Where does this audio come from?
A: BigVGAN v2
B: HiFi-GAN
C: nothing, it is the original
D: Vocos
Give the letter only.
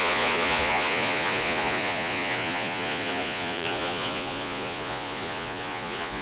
D